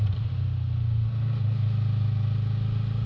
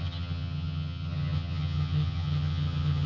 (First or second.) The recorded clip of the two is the first